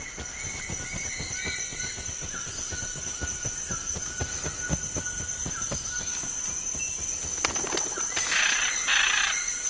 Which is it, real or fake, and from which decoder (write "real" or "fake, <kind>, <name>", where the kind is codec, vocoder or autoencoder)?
real